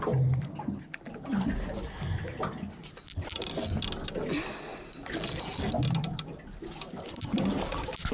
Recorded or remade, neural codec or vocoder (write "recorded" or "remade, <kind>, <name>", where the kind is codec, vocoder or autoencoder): recorded